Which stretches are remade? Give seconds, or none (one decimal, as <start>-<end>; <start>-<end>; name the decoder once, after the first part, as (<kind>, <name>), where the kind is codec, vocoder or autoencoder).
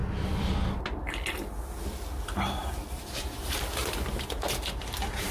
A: 3.0-3.8 (vocoder, BigVGAN v2); 4.8-5.3